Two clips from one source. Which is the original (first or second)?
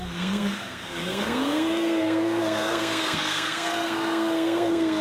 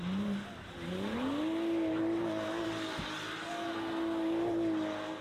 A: second